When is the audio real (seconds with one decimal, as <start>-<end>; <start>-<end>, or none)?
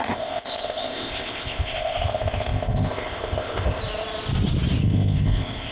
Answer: 3.8-4.8